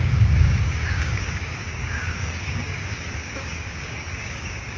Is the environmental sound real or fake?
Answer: fake